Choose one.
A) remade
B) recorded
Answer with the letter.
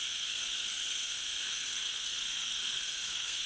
A